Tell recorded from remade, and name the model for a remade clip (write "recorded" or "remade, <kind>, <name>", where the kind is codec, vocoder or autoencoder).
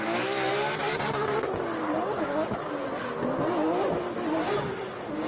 recorded